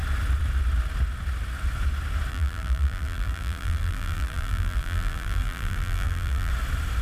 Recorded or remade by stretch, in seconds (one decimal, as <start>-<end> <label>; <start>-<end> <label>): 0.0-2.3 recorded; 2.3-6.5 remade; 6.5-7.0 recorded